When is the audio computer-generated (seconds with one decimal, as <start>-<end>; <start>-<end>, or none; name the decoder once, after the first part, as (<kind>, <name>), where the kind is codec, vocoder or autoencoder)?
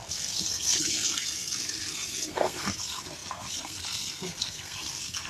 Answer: 0.0-5.3 (codec, SNAC)